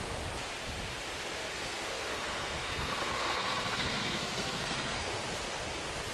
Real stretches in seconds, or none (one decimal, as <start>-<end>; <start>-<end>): 0.0-1.4; 5.1-6.1